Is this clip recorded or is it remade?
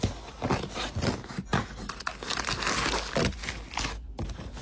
recorded